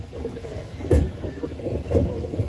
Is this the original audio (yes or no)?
no